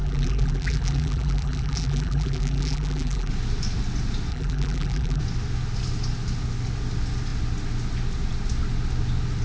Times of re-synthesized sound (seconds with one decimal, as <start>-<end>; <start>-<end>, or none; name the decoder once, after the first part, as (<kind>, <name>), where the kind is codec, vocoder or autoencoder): 0.0-3.3 (vocoder, BigVGAN v2); 4.3-5.2